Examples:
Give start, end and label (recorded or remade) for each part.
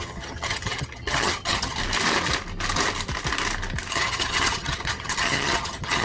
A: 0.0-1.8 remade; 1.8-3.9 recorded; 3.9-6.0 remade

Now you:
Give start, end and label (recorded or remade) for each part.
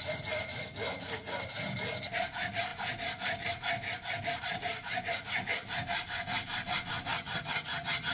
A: 0.0-7.1 recorded; 7.1-8.1 remade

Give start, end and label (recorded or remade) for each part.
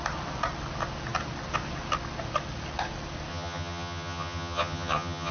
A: 0.0-3.3 recorded; 3.3-5.3 remade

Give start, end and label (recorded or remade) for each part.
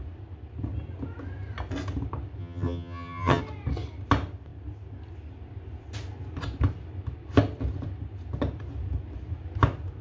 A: 0.0-2.4 recorded; 2.4-3.4 remade; 3.4-10.0 recorded